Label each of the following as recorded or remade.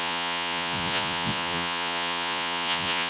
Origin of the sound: remade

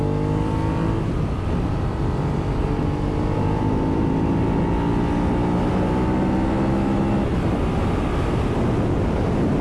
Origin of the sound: recorded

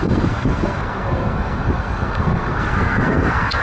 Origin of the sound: remade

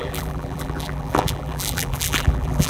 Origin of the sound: remade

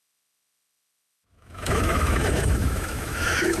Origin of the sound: remade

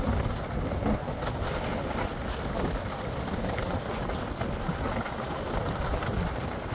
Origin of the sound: recorded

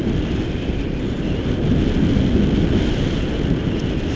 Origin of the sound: recorded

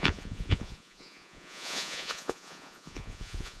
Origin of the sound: remade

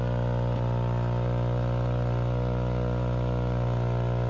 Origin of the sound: recorded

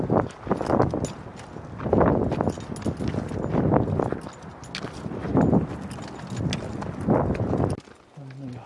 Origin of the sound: recorded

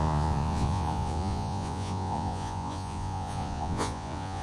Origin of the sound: remade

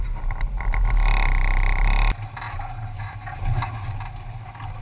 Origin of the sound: recorded